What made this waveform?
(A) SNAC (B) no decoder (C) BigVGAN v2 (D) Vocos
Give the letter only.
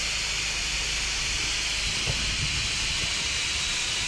B